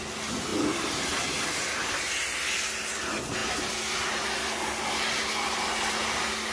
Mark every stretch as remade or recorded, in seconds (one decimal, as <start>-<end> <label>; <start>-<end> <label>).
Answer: 0.0-6.5 recorded